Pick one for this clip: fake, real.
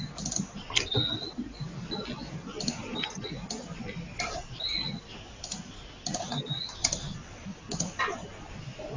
real